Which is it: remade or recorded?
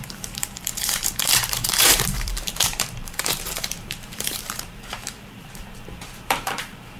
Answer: remade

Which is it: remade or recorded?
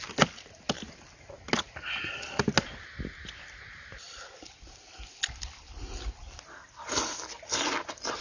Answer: recorded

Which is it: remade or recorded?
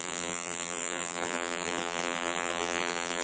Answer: remade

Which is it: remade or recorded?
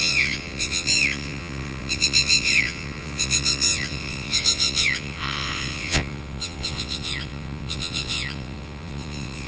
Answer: remade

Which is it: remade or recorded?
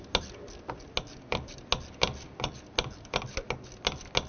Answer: recorded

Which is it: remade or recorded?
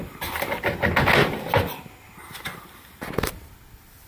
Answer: recorded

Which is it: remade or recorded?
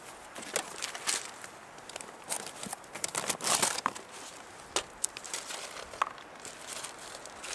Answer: recorded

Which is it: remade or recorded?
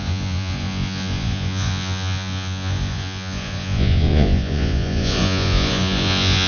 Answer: remade